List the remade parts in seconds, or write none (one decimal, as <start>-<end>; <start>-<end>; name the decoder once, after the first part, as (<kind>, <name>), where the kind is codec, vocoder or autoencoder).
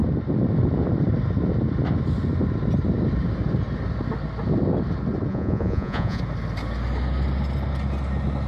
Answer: 5.3-6.2 (vocoder, Vocos)